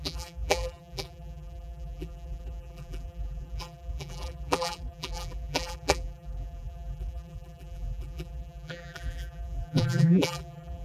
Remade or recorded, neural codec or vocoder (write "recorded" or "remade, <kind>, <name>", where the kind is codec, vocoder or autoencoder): remade, vocoder, BigVGAN v2